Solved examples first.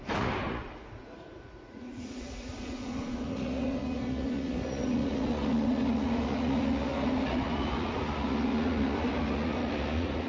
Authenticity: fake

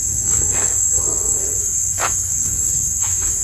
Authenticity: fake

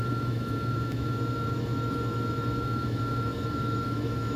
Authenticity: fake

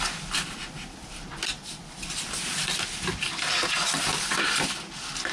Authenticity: real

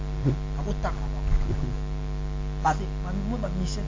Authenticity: real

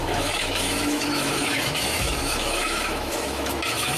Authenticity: fake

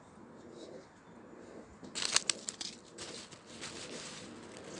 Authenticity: real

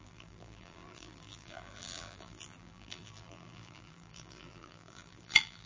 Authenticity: fake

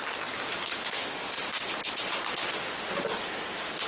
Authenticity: real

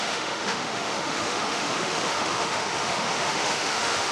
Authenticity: fake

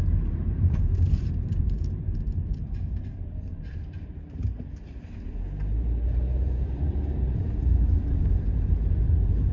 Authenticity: fake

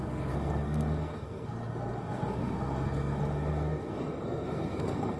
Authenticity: fake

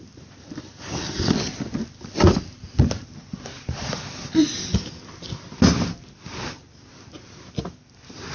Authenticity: real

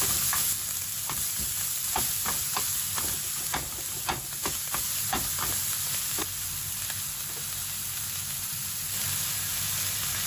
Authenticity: real